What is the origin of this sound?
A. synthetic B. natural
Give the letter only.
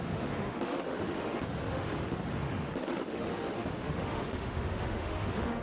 A